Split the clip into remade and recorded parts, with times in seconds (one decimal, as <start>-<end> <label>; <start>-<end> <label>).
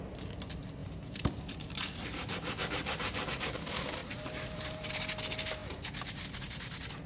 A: 0.0-0.8 recorded; 0.8-3.3 remade; 3.3-4.0 recorded; 4.0-4.9 remade; 4.9-7.1 recorded